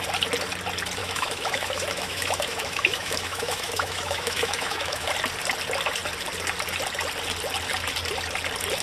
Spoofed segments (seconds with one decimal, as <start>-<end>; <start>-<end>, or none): 1.0-5.1